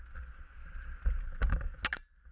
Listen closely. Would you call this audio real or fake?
real